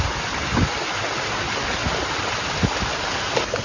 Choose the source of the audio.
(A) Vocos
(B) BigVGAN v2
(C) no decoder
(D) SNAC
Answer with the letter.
C